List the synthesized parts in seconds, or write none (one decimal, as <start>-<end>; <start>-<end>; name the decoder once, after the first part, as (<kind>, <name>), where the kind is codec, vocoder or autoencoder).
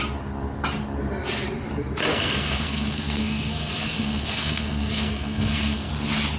2.1-5.9 (codec, SNAC)